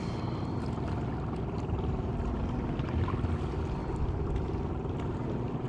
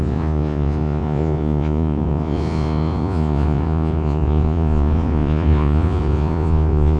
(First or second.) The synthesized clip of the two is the second